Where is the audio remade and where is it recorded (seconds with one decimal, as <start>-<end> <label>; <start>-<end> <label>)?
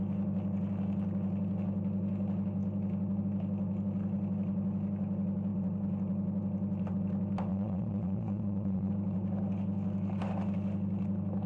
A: 0.0-7.5 recorded; 7.5-8.9 remade; 8.9-11.5 recorded